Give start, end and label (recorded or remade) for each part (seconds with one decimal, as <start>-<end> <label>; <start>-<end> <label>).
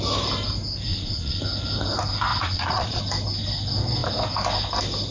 0.0-0.9 recorded; 0.9-1.4 remade; 1.4-2.3 recorded; 2.3-3.0 remade; 3.0-5.1 recorded